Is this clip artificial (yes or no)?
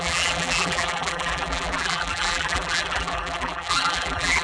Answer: yes